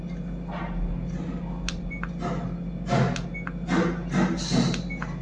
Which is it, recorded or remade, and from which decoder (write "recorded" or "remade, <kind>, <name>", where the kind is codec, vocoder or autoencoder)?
recorded